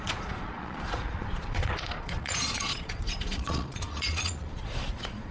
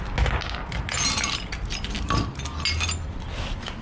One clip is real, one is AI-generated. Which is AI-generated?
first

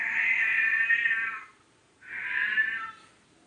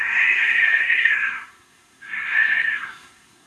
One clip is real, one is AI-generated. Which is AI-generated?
second